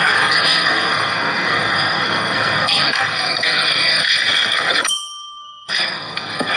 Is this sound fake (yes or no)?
yes